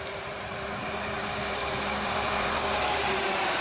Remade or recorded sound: remade